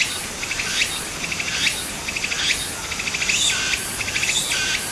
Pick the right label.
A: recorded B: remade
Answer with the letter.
A